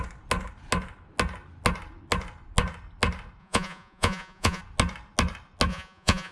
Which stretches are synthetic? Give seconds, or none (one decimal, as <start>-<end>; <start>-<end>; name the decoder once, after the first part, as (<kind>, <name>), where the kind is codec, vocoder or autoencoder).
3.4-4.6 (vocoder, Vocos); 5.7-6.3